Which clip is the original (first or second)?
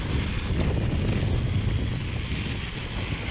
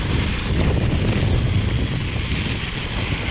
first